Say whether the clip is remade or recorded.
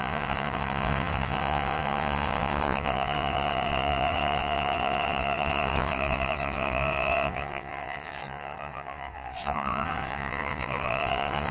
remade